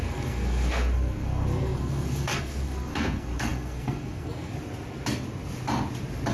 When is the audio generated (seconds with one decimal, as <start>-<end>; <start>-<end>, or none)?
0.0-4.5